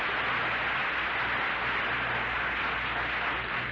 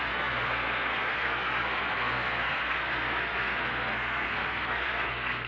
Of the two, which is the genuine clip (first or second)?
first